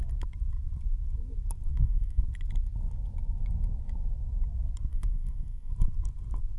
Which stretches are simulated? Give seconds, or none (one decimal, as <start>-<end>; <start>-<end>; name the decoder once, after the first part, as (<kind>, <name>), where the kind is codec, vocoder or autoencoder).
1.7-2.2 (codec, SNAC); 4.9-5.7